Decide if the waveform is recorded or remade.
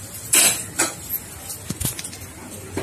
recorded